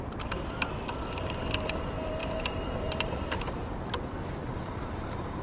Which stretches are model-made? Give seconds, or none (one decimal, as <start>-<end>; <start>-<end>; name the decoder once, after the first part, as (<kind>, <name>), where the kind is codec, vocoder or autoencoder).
2.2-3.8 (vocoder, BigVGAN v2); 4.4-5.4